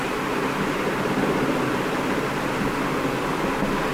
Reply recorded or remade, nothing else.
recorded